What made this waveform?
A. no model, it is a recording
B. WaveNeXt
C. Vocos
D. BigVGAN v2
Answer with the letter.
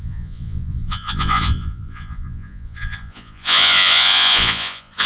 C